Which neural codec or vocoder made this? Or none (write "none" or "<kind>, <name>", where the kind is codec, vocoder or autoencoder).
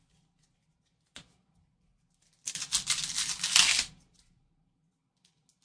none